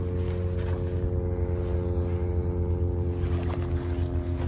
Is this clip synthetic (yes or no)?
no